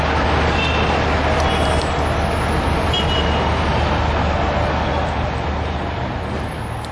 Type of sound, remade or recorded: recorded